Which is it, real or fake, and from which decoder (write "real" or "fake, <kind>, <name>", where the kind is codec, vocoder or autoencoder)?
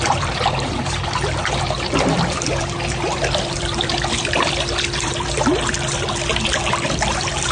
fake, vocoder, BigVGAN v2